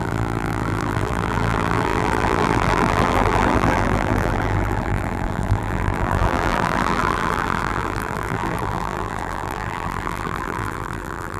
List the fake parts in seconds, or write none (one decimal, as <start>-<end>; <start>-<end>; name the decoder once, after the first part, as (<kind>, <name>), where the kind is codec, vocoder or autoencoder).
0.0-11.4 (vocoder, BigVGAN v2)